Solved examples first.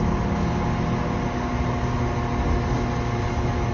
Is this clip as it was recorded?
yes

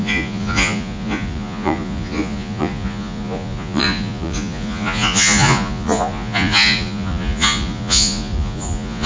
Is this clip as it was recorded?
no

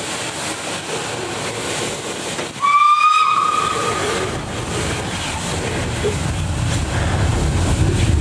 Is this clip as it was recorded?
yes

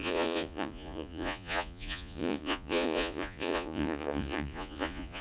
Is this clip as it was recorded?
no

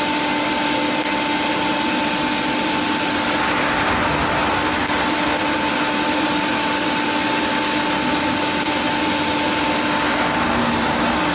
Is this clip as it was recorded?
yes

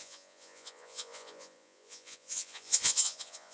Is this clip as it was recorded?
no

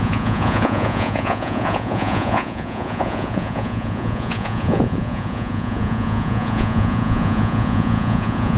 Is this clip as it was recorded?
no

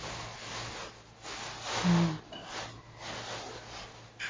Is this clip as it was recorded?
yes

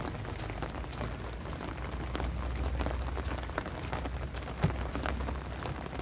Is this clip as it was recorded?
yes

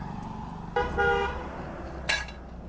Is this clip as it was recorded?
yes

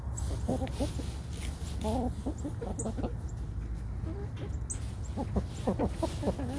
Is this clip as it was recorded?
yes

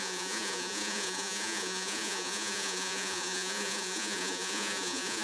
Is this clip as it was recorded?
no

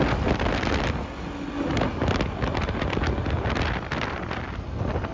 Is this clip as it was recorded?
yes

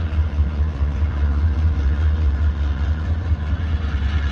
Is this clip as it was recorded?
no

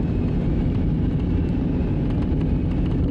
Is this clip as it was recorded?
yes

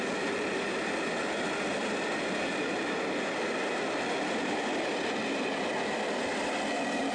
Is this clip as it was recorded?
yes